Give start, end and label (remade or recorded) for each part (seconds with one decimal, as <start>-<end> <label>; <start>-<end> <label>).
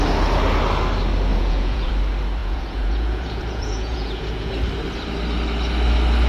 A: 0.0-1.3 recorded; 1.3-1.9 remade; 1.9-2.4 recorded; 2.4-4.5 remade; 4.5-6.3 recorded